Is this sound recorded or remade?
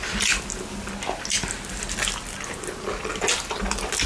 recorded